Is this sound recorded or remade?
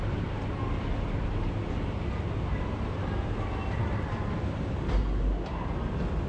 recorded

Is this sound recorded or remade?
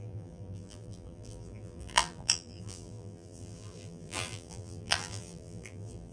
remade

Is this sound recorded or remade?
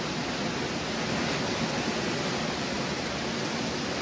recorded